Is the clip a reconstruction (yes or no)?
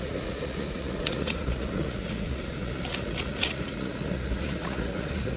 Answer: yes